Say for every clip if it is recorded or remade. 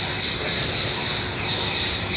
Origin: recorded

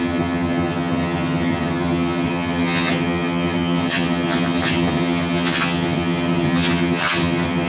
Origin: remade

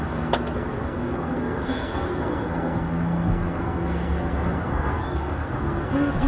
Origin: remade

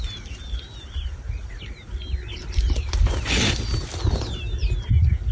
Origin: recorded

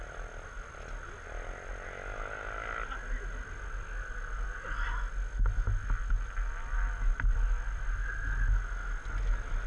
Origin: recorded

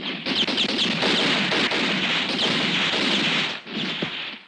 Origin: recorded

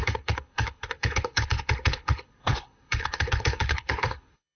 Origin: remade